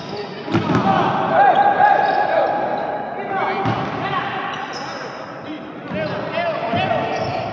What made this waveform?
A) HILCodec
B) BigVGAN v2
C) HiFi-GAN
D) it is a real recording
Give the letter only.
D